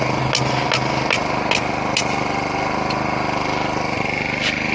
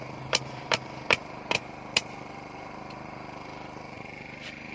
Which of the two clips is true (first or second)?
first